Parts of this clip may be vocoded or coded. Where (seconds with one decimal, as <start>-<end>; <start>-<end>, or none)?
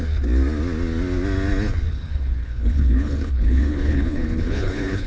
1.9-5.1